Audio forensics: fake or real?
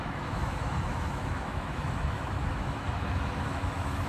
fake